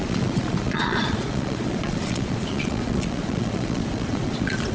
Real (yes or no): no